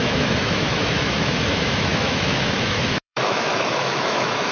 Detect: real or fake fake